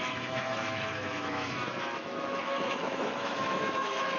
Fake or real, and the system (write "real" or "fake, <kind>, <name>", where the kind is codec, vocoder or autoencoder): fake, autoencoder, DAC-VAE